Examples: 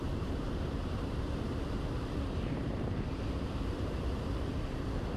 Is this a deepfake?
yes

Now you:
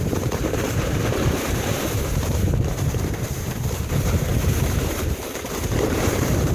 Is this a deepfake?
yes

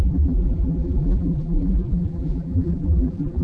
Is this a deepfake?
yes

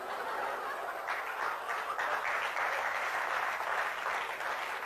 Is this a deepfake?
no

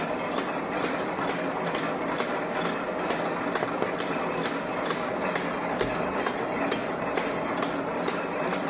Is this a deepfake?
yes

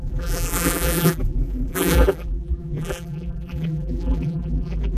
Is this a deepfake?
yes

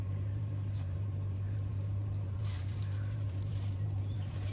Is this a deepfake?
yes